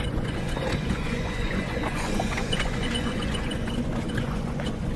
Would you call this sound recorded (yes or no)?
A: no